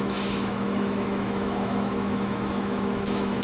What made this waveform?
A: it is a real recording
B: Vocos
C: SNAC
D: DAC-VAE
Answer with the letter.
D